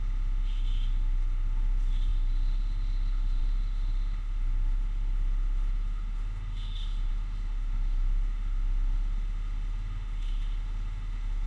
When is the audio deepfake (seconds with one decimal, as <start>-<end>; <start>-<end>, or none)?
0.0-11.5

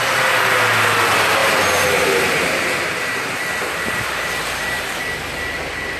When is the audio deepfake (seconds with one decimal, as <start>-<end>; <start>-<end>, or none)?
1.4-5.0